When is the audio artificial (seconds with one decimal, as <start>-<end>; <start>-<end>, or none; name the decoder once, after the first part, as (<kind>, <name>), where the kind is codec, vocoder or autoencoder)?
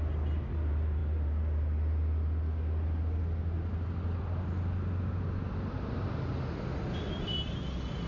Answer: none